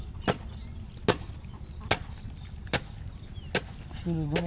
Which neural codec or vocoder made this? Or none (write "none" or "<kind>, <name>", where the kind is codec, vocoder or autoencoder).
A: none